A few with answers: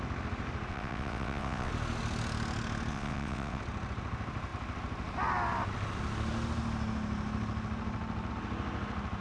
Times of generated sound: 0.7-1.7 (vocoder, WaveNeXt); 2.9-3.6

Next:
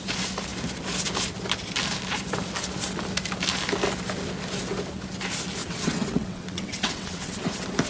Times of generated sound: 5.6-7.5 (vocoder, WaveNeXt)

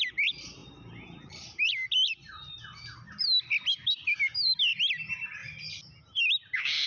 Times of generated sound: none